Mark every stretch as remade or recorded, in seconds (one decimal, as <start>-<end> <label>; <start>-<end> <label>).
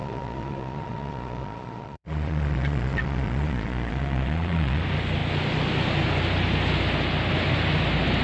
0.0-4.8 remade; 4.8-8.2 recorded